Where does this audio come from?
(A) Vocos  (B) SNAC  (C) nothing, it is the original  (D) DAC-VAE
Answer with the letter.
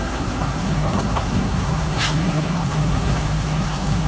B